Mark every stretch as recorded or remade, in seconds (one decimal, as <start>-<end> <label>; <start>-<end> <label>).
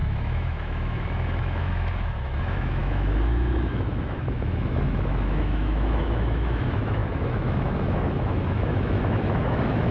0.0-9.9 remade